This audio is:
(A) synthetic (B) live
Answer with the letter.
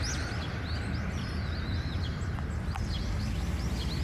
B